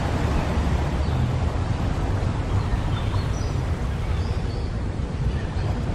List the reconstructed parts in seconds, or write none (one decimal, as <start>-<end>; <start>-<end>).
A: 0.0-5.9